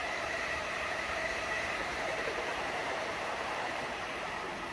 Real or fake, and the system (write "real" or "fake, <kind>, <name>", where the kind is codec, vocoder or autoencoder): fake, vocoder, BigVGAN v2